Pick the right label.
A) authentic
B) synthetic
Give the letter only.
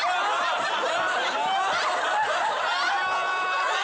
A